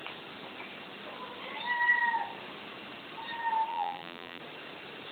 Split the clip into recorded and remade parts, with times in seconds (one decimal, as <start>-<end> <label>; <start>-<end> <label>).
0.0-3.7 recorded; 3.7-4.4 remade; 4.4-5.1 recorded